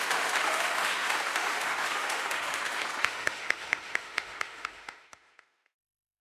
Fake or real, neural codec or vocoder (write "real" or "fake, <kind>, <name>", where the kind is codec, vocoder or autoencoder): fake, autoencoder, DAC-VAE